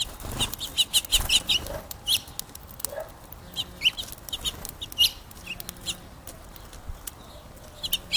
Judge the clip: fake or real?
real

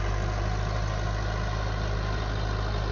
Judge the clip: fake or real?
real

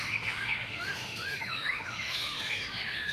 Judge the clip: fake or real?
fake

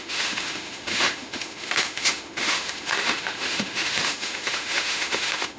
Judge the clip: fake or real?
fake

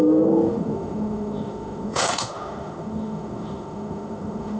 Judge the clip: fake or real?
fake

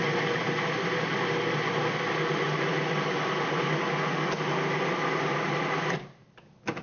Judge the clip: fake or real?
real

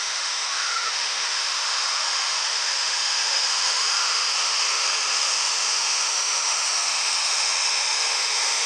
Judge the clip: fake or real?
fake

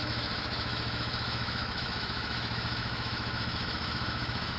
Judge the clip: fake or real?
fake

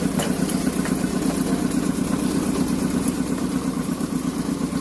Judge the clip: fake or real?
real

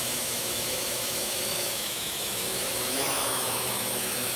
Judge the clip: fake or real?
fake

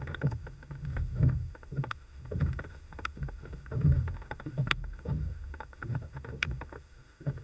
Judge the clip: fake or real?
fake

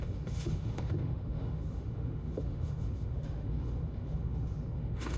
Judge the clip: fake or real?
fake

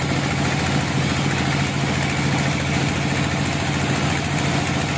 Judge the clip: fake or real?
real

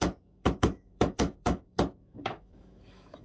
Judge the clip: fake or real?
fake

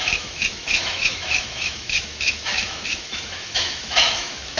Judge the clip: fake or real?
fake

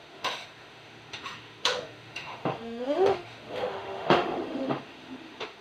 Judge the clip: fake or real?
fake